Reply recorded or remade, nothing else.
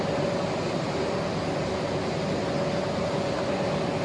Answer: recorded